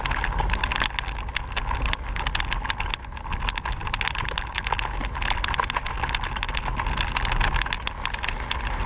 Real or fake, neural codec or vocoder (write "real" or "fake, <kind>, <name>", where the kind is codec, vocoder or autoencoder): real